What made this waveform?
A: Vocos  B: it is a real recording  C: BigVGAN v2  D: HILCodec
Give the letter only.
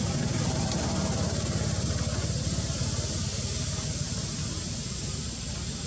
B